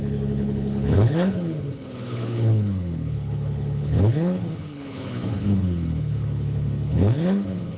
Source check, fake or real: fake